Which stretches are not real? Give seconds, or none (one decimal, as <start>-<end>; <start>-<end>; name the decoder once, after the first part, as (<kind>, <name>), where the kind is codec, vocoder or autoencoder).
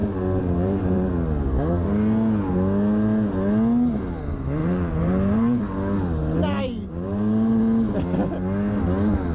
0.0-1.1 (vocoder, BigVGAN v2); 4.6-5.6; 6.2-7.6